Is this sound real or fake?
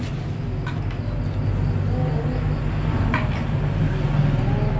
real